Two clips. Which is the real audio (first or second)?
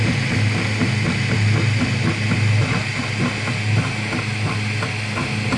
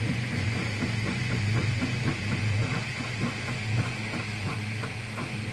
first